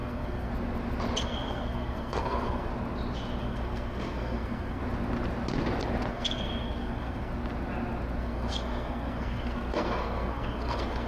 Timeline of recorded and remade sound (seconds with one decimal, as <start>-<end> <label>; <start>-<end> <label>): 0.0-0.5 remade; 0.5-1.2 recorded; 1.2-2.7 remade; 2.7-3.4 recorded; 3.4-4.8 remade; 4.8-6.1 recorded; 6.1-7.3 remade; 7.3-8.2 recorded; 8.2-11.1 remade